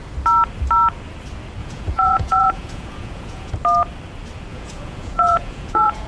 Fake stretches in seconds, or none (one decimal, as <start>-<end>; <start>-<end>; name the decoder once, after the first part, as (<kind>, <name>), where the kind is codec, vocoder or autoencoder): 1.6-3.5 (vocoder, Vocos); 4.5-6.1